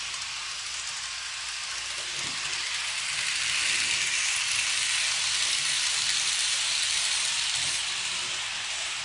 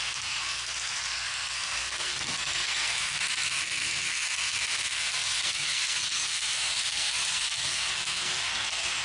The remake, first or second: second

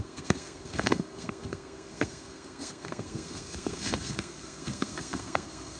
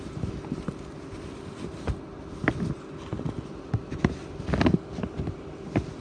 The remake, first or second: first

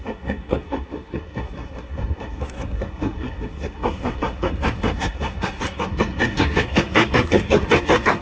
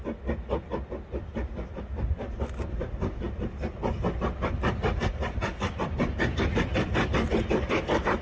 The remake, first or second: first